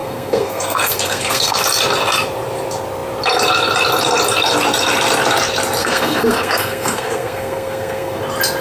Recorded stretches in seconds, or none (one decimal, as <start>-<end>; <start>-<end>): 1.6-5.8; 8.2-8.6